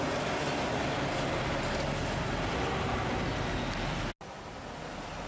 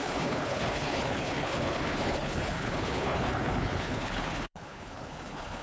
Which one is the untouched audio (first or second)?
first